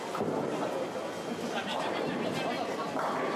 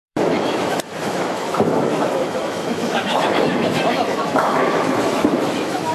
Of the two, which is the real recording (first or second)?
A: first